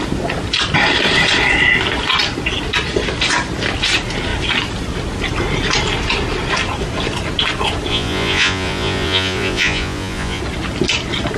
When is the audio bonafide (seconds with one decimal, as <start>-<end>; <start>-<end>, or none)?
0.0-7.9; 10.4-11.4